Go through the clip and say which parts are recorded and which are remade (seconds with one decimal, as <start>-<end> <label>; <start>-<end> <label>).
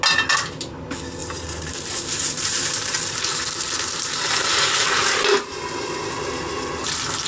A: 0.0-1.2 recorded; 1.2-5.6 remade; 5.6-7.3 recorded